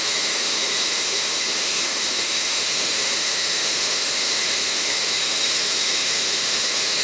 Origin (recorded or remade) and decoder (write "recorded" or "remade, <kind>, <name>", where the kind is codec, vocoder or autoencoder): remade, autoencoder, DAC-VAE